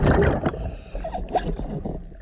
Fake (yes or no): yes